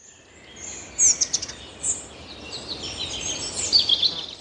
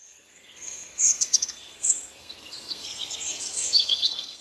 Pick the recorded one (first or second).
first